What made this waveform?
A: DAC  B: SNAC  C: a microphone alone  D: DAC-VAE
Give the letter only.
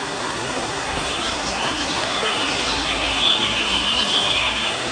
B